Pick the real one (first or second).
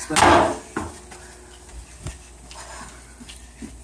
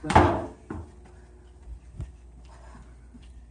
first